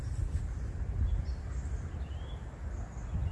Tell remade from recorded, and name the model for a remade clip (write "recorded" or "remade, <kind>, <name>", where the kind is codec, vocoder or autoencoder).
recorded